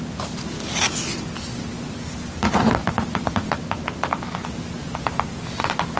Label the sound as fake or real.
real